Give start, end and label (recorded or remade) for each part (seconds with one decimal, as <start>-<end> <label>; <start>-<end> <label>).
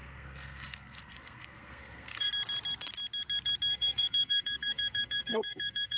0.0-2.3 remade; 2.3-3.7 recorded; 3.7-6.0 remade